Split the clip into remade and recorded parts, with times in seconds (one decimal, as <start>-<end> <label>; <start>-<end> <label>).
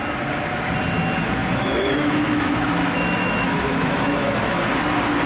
0.0-1.4 recorded; 1.4-4.6 remade; 4.6-5.3 recorded